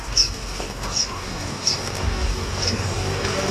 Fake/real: fake